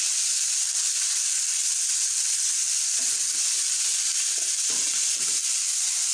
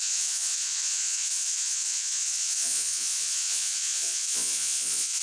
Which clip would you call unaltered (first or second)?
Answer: first